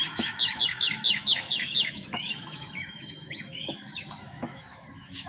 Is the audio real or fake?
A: fake